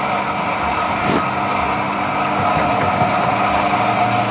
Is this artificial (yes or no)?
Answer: no